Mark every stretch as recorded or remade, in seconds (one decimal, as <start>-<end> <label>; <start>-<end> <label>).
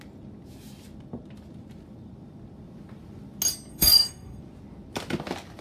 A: 0.0-3.7 recorded; 3.7-4.4 remade; 4.4-5.6 recorded